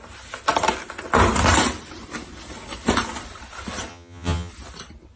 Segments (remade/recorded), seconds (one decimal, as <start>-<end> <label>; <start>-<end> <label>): 0.0-3.9 recorded; 3.9-4.5 remade; 4.5-5.2 recorded